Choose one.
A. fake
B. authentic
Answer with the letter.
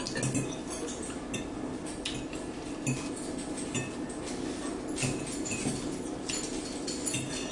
B